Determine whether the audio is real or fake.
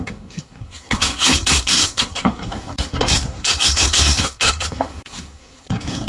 fake